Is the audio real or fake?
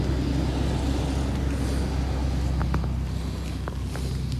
real